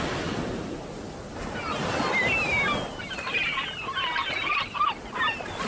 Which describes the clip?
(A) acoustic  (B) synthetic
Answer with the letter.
A